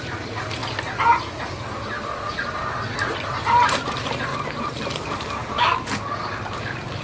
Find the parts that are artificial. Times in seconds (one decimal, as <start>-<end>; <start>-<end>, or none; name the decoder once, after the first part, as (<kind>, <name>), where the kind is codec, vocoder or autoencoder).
0.0-0.6 (vocoder, BigVGAN v2); 2.3-7.0